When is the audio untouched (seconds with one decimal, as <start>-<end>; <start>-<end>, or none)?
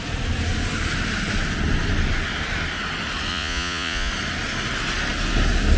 0.0-3.3; 4.1-5.8